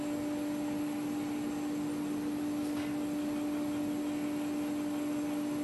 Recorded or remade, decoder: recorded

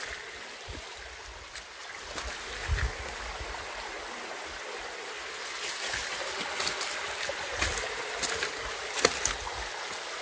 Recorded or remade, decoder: recorded